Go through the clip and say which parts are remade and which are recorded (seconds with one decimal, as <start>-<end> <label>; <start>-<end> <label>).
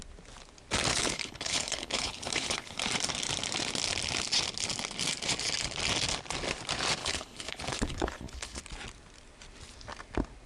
0.0-0.9 recorded; 0.9-2.8 remade; 2.8-7.0 recorded; 7.0-8.6 remade; 8.6-10.5 recorded